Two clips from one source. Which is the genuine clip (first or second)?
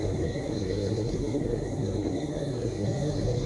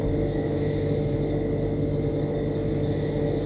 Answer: second